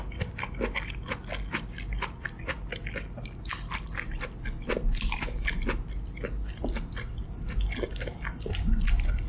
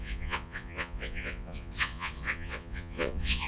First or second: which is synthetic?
second